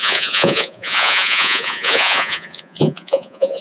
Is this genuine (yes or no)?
no